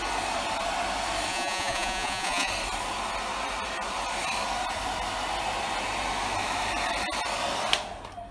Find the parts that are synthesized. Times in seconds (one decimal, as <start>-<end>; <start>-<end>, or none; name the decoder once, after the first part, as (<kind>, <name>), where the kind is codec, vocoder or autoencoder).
1.3-2.5 (vocoder, Vocos)

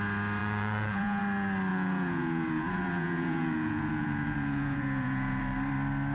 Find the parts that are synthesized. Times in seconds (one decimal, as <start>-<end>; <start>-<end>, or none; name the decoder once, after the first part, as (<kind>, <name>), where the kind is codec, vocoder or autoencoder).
0.4-1.2 (vocoder, Vocos); 1.7-5.4

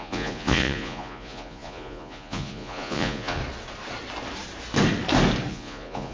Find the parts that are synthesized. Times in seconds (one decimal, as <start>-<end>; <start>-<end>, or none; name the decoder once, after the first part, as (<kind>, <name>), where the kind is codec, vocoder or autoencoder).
0.0-3.4 (vocoder, Vocos); 5.5-6.1

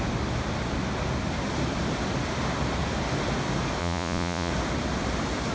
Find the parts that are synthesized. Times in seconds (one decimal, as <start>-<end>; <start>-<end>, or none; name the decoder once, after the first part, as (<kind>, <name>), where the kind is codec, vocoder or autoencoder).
3.8-4.5 (vocoder, Vocos)

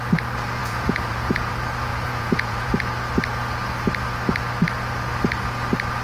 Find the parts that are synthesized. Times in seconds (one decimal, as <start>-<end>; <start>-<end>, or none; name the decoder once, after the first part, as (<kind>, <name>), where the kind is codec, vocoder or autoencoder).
0.6-1.5 (vocoder, Vocos); 1.9-2.9

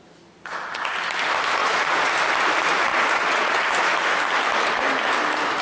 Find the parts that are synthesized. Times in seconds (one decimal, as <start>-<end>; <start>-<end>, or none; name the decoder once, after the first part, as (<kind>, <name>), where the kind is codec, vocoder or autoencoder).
1.6-2.1 (vocoder, Vocos); 2.9-3.6

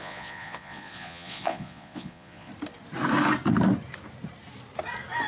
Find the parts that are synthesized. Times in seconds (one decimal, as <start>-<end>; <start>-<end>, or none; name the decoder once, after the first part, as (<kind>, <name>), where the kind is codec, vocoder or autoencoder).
0.0-2.5 (vocoder, Vocos)

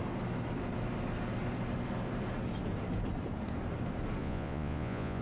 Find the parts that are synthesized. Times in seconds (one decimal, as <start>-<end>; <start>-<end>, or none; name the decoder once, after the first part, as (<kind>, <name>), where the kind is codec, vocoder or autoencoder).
4.2-5.2 (vocoder, Vocos)